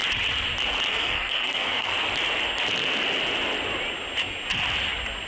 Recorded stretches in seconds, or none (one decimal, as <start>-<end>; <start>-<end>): 0.0-0.9; 1.9-5.3